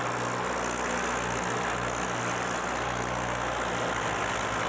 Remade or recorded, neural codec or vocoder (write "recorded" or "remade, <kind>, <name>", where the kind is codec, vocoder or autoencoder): recorded